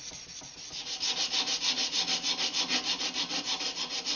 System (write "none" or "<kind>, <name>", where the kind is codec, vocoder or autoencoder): none